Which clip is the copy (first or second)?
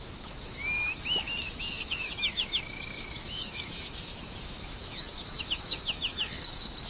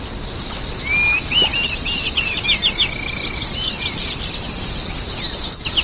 first